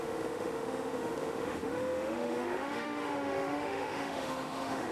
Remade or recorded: remade